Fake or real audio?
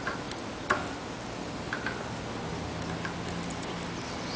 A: real